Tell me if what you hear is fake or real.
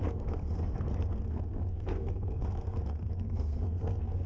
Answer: fake